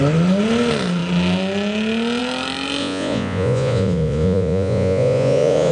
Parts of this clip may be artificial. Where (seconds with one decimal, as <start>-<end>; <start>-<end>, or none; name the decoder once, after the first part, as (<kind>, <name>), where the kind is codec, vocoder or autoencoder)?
2.8-5.7 (vocoder, Vocos)